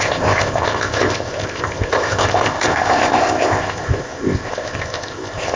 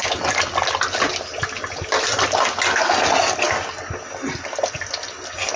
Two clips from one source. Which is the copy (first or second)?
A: first